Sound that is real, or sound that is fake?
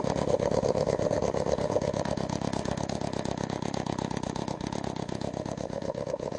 fake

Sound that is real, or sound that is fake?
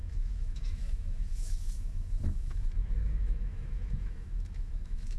fake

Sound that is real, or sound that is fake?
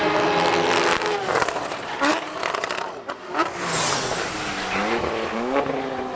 real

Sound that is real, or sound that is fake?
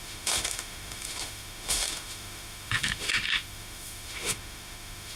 fake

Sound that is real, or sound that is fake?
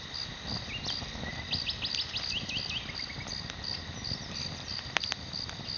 real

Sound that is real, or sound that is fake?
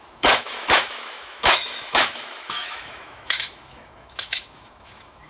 fake